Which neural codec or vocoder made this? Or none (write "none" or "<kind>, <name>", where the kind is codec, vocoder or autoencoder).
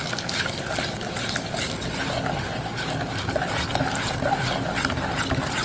none